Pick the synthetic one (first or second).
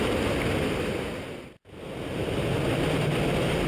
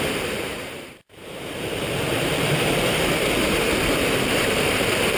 second